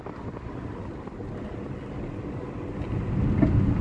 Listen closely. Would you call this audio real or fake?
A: real